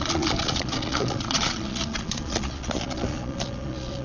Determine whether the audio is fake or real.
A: fake